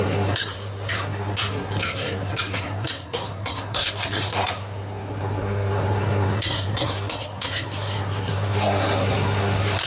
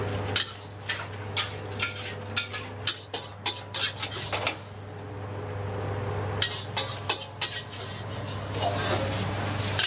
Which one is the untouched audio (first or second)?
second